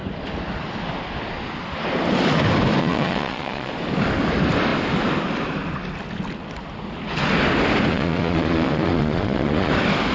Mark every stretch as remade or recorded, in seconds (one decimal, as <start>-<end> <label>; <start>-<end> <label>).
0.0-2.8 recorded; 2.8-3.7 remade; 3.7-7.9 recorded; 7.9-9.7 remade; 9.7-10.1 recorded